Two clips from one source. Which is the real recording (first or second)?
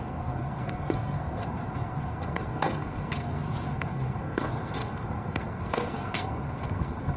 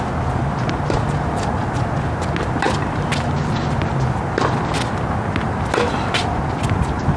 second